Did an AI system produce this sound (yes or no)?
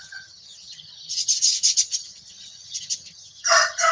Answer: yes